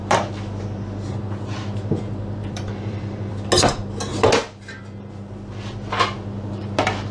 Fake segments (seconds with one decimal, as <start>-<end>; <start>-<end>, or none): 2.4-3.3